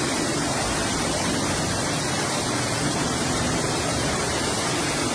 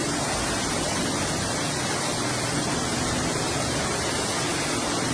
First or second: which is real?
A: second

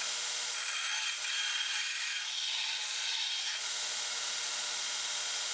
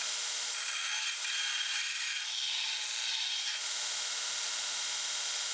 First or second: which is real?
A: second